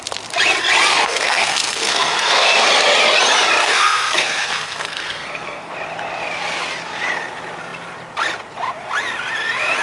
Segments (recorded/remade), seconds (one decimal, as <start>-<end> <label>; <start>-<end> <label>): 0.0-0.9 recorded; 0.9-2.7 remade; 2.7-3.6 recorded; 3.6-5.7 remade; 5.7-9.8 recorded